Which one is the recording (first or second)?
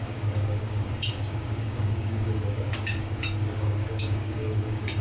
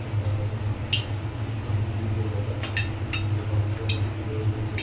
second